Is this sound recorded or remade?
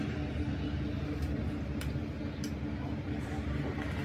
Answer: recorded